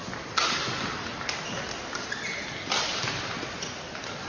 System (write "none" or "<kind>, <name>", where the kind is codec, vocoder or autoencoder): none